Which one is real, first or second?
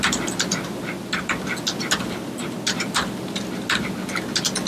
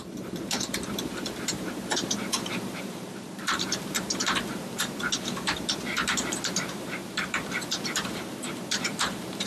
first